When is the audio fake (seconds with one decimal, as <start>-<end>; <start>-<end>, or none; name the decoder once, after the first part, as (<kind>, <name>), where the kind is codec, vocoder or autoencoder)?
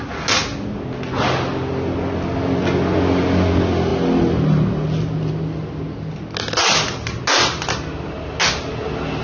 none